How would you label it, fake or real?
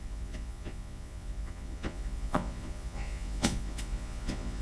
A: fake